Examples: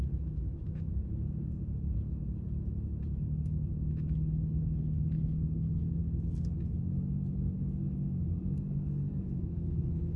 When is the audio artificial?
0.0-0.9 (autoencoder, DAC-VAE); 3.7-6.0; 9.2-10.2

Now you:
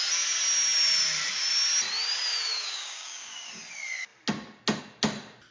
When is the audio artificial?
2.3-3.5 (codec, DAC)

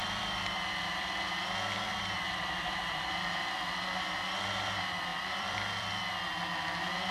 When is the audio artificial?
0.0-1.3 (vocoder, BigVGAN v2); 1.9-3.6; 5.1-6.0

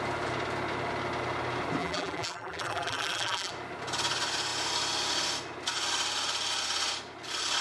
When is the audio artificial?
1.8-3.5 (vocoder, BigVGAN v2)

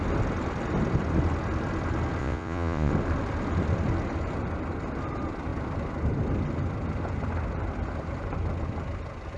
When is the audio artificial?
2.2-2.9 (vocoder, Vocos)

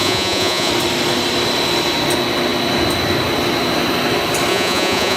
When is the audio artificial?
0.0-0.7 (vocoder, Vocos); 4.5-5.2

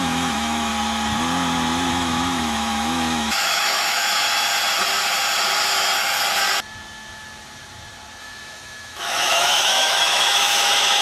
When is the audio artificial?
0.0-0.7 (autoencoder, DAC-VAE); 1.9-4.2; 8.2-11.0

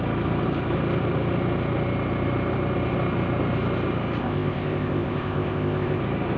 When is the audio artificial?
4.2-6.0 (codec, ZipCodec)